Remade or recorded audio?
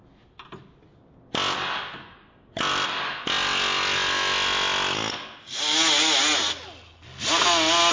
recorded